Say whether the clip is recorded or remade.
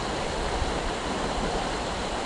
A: recorded